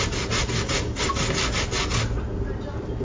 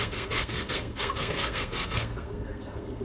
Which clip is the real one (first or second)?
first